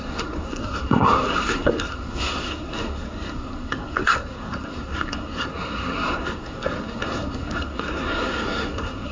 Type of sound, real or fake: fake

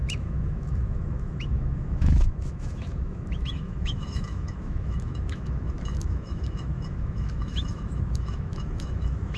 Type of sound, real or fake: fake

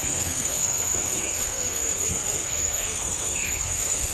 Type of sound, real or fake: fake